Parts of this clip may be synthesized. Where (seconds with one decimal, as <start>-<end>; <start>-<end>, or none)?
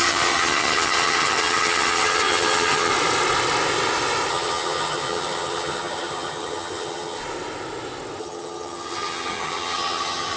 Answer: 0.0-2.9; 4.3-7.2; 8.2-10.4